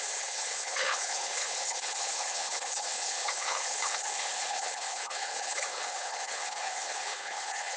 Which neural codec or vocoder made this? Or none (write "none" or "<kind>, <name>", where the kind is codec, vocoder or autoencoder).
codec, HILCodec